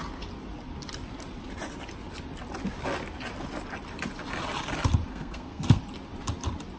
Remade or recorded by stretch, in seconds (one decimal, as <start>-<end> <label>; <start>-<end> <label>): 0.0-5.1 recorded; 5.1-5.8 remade; 5.8-6.8 recorded

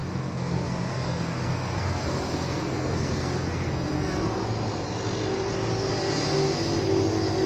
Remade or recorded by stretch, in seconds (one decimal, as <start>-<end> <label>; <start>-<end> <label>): 0.0-4.4 remade; 4.4-7.5 recorded